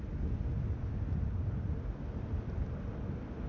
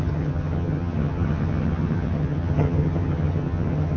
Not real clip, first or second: second